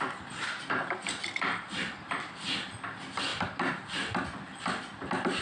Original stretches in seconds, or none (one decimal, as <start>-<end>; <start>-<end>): 0.0-5.4